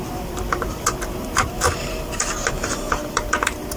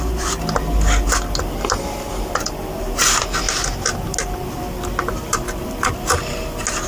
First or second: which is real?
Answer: second